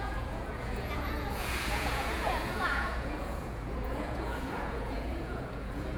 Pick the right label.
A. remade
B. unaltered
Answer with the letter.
A